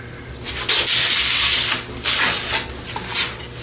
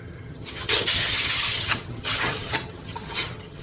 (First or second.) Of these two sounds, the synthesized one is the second